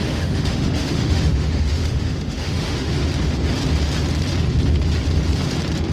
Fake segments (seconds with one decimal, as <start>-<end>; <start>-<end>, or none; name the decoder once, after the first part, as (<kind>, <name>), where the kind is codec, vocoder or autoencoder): 0.0-3.0 (autoencoder, DAC-VAE)